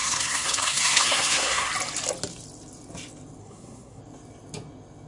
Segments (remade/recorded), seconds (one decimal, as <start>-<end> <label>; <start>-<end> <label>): 0.0-1.7 remade; 1.7-3.4 recorded; 3.4-4.0 remade; 4.0-5.1 recorded